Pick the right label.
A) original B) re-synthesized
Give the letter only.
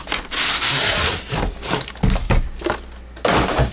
A